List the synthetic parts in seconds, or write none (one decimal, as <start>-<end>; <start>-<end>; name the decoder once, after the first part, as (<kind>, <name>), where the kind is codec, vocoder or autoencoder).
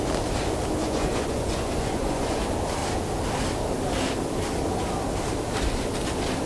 0.8-2.4 (vocoder, Vocos)